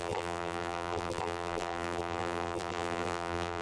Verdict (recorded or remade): remade